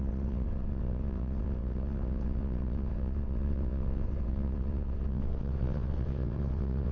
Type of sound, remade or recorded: remade